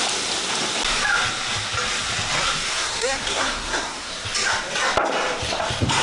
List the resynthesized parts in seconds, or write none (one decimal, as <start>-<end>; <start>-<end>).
2.7-4.1